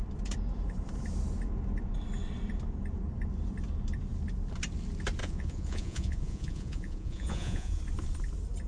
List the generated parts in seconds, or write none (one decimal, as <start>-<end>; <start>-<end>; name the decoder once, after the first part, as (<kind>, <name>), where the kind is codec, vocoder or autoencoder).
5.2-7.8 (vocoder, Vocos)